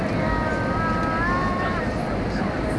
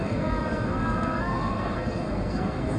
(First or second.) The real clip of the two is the first